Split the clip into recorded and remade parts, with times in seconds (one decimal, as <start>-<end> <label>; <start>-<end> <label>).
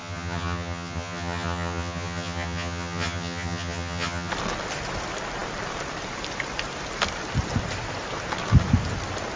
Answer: 0.0-4.3 remade; 4.3-9.4 recorded